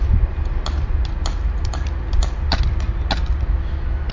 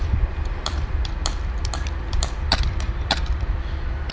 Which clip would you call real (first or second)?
first